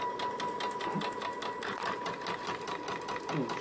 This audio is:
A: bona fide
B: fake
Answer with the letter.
A